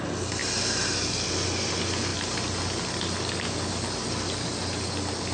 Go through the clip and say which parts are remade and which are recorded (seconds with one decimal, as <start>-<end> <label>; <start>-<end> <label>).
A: 0.0-5.3 recorded